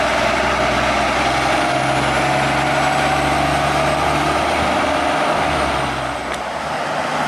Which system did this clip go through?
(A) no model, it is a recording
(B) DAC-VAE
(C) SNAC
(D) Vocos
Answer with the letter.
A